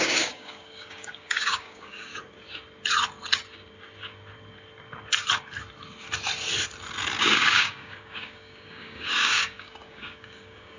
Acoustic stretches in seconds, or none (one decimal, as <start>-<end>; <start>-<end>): 2.1-7.2